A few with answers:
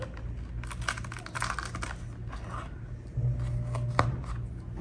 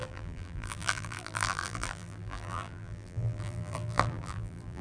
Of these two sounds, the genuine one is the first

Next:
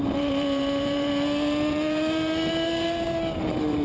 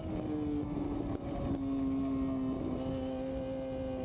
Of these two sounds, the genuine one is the second